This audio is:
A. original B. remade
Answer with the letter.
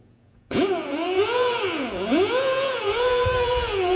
B